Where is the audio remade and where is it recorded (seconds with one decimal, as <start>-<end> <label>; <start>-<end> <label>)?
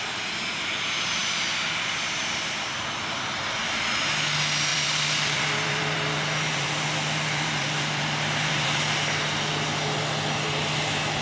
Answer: 0.0-4.7 recorded; 4.7-8.8 remade; 8.8-11.2 recorded